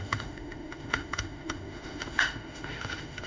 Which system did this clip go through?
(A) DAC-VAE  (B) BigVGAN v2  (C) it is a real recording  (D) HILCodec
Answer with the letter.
A